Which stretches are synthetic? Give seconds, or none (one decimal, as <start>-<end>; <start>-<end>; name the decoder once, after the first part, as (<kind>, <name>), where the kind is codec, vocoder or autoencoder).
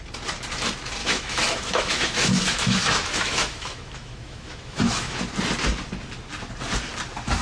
1.0-5.2 (autoencoder, DAC-VAE)